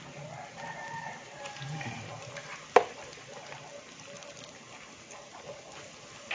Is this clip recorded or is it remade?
recorded